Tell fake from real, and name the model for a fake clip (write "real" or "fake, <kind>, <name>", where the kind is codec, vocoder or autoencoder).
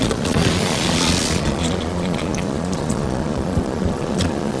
fake, vocoder, Vocos